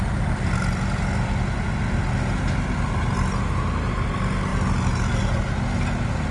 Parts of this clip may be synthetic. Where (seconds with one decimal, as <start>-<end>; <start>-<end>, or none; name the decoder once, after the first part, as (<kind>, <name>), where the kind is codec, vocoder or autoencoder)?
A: none